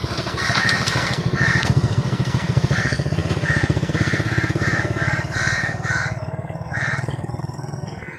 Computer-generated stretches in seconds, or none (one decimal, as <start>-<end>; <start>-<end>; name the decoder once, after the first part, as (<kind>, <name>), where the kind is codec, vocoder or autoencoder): 0.0-8.2 (codec, SNAC)